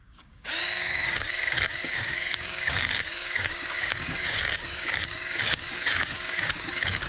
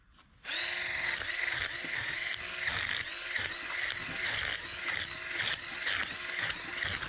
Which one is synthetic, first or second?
first